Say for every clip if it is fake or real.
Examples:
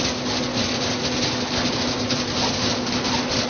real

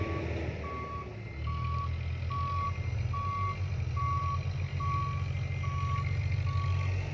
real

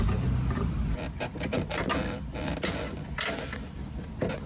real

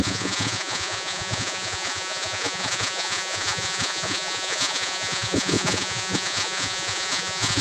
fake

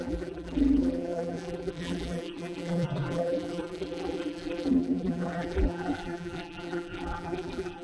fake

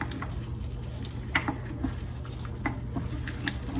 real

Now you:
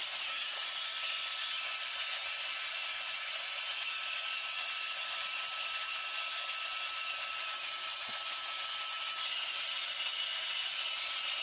real